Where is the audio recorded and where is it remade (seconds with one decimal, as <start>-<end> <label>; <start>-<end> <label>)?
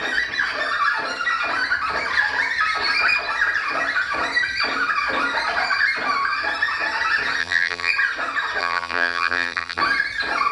0.0-7.4 recorded; 7.4-7.9 remade; 7.9-8.6 recorded; 8.6-9.8 remade; 9.8-10.5 recorded